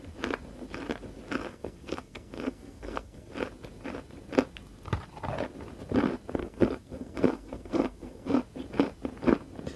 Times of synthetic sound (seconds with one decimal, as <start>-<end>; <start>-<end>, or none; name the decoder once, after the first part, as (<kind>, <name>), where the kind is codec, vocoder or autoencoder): 1.5-3.3 (codec, SNAC); 6.4-8.4